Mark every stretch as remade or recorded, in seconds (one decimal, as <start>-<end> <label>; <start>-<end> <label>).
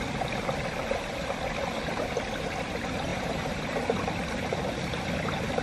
0.0-3.1 recorded; 3.1-3.8 remade; 3.8-5.6 recorded